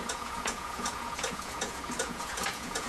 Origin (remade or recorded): remade